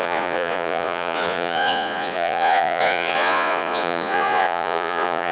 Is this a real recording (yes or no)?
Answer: no